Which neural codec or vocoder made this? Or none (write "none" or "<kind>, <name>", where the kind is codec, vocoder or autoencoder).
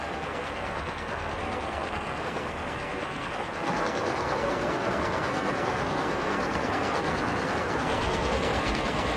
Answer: codec, SNAC